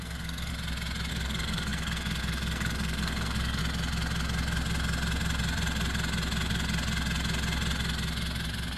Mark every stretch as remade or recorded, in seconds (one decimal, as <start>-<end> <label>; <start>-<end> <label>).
0.0-0.5 remade; 0.5-1.1 recorded; 1.1-3.6 remade; 3.6-8.8 recorded